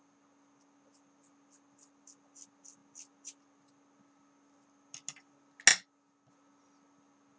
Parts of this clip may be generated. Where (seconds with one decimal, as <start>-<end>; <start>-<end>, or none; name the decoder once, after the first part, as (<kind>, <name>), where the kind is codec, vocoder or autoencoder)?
none

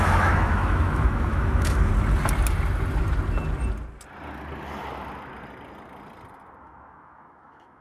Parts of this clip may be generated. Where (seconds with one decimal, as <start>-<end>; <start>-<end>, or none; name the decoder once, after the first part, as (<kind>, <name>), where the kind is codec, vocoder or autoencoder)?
0.0-1.9 (autoencoder, DAC-VAE); 6.6-7.8